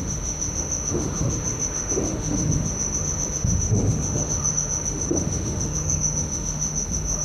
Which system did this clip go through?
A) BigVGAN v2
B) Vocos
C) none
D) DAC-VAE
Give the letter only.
D